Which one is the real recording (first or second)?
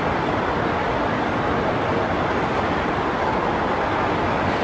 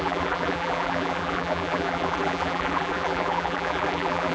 first